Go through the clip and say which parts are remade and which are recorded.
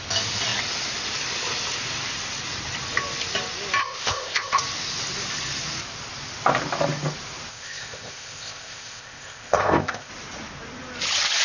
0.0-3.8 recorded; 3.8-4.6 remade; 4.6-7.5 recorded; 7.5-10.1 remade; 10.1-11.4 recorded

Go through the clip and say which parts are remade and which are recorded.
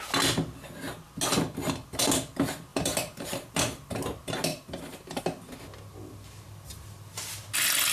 0.0-2.7 recorded; 2.7-3.9 remade; 3.9-4.5 recorded; 4.5-5.2 remade; 5.2-7.9 recorded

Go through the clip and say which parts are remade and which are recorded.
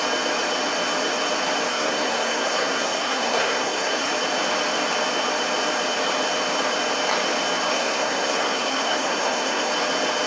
0.0-1.7 recorded; 1.7-4.1 remade; 4.1-7.7 recorded; 7.7-9.7 remade; 9.7-10.3 recorded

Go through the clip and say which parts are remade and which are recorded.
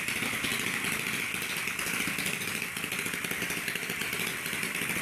0.0-5.0 recorded